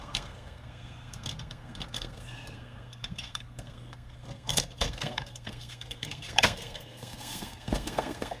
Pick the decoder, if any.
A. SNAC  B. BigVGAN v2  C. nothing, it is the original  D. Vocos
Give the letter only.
A